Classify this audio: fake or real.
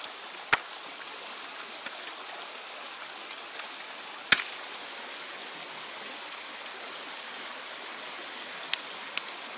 real